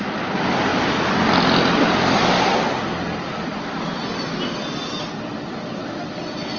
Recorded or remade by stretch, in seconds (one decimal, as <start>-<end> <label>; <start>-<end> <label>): 0.0-6.6 recorded